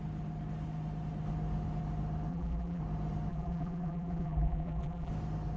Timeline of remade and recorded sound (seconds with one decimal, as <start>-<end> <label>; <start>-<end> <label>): 0.0-2.3 recorded; 2.3-2.8 remade; 2.8-3.3 recorded; 3.3-5.1 remade; 5.1-5.6 recorded